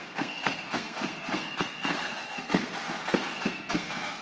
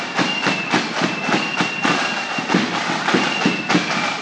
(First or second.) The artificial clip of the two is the first